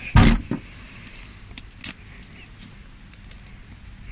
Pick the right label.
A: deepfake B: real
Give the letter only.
B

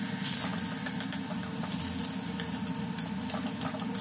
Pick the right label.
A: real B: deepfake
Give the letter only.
A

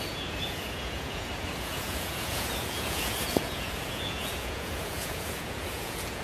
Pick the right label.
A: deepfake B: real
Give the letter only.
A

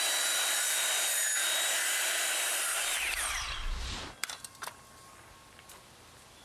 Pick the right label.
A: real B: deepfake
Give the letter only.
B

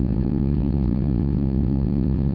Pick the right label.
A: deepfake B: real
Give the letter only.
A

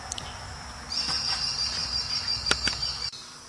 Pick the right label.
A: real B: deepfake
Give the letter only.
A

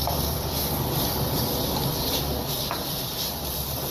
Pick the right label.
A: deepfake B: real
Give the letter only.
A